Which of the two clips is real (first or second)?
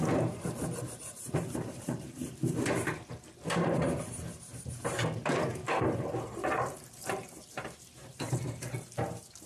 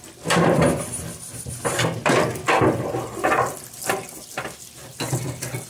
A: second